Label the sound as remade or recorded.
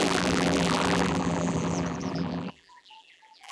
remade